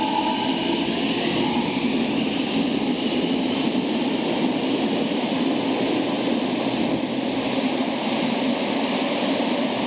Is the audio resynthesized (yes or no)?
no